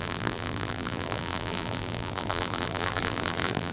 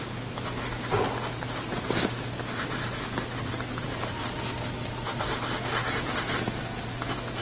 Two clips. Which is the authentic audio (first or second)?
second